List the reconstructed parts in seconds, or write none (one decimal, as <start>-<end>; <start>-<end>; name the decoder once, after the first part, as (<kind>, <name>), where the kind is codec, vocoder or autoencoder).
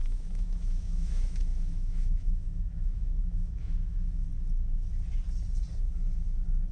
0.0-4.3 (autoencoder, DAC-VAE)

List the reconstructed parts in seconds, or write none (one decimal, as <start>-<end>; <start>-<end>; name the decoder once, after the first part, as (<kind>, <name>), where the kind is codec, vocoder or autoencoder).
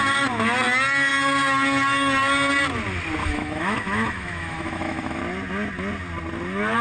3.2-5.2 (autoencoder, DAC-VAE)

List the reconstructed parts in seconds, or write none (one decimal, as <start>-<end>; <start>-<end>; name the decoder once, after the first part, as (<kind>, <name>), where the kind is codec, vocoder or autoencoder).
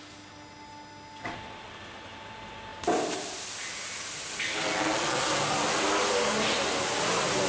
none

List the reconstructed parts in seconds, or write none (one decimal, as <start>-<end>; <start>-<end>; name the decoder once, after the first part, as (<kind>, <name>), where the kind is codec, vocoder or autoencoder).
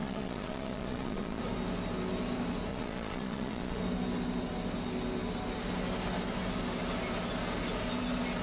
0.0-1.4 (vocoder, Vocos); 2.7-3.8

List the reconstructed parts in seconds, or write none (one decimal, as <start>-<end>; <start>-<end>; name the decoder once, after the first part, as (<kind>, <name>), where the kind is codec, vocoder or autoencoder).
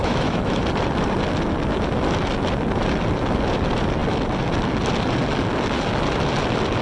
0.0-0.6 (autoencoder, DAC-VAE)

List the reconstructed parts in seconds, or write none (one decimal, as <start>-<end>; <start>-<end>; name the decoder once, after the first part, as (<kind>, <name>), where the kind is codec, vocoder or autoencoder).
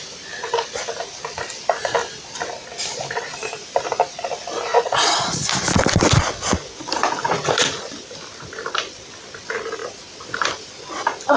4.7-5.5 (vocoder, Vocos); 7.2-7.8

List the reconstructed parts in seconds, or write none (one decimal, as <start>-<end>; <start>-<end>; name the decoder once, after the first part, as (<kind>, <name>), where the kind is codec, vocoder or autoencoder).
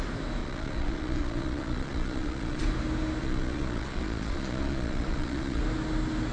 0.4-2.6 (vocoder, Vocos); 3.2-5.6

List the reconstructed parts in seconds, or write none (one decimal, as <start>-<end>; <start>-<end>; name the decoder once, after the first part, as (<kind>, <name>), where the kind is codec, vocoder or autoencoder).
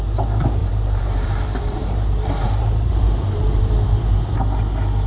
0.6-3.7 (vocoder, BigVGAN v2)